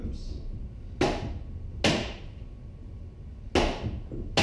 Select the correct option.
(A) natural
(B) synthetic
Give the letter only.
A